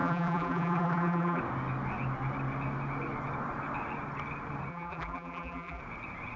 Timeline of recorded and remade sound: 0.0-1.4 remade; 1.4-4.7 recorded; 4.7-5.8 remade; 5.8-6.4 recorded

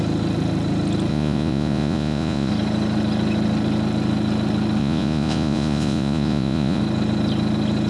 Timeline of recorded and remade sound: 0.0-1.1 recorded; 1.1-2.5 remade; 2.5-4.8 recorded; 4.8-6.8 remade; 6.8-7.9 recorded